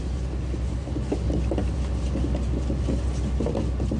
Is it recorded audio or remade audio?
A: recorded